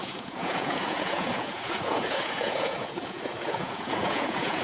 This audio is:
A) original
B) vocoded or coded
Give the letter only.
B